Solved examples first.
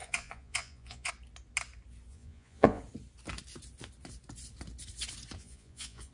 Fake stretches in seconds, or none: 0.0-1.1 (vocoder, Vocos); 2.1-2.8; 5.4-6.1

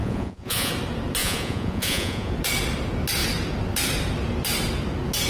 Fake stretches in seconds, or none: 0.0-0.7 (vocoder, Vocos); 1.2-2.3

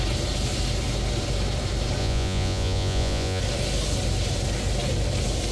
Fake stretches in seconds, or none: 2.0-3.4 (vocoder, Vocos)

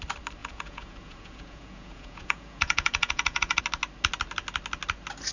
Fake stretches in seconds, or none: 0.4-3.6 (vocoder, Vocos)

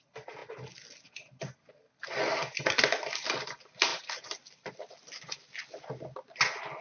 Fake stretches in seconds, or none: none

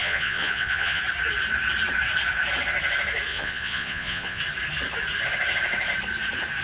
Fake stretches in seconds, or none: 0.0-1.0 (vocoder, Vocos); 3.3-4.4